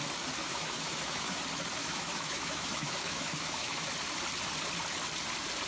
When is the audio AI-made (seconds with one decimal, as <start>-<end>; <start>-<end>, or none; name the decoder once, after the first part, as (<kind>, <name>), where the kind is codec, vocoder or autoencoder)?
0.4-1.4 (autoencoder, DAC-VAE); 1.8-3.9